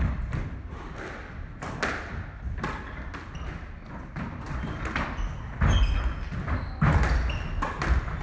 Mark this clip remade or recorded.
recorded